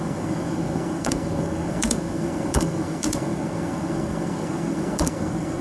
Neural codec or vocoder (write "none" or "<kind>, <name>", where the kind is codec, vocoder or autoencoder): codec, SNAC